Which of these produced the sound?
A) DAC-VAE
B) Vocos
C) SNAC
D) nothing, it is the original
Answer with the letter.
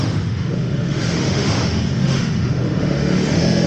A